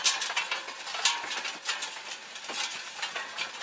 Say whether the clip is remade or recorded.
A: recorded